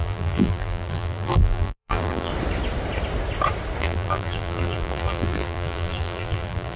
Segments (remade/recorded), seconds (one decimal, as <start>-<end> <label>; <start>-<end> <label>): 0.0-2.3 remade; 2.3-3.8 recorded; 3.8-6.8 remade